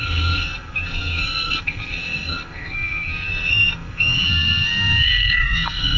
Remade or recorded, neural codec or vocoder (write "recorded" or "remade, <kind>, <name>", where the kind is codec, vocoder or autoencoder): remade, codec, SNAC